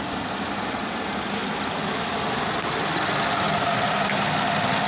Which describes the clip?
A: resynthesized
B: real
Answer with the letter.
B